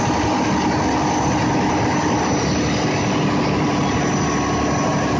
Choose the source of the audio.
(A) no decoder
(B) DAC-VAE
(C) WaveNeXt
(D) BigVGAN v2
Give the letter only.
A